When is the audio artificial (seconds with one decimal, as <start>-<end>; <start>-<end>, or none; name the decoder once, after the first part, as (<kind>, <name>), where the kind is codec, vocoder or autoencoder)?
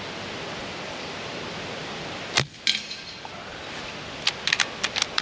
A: none